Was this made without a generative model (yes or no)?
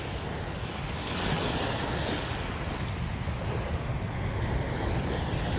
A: yes